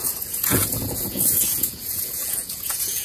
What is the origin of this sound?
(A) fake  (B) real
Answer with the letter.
A